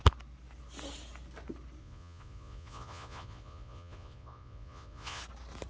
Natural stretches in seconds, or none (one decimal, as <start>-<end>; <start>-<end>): 0.0-1.8; 5.2-5.7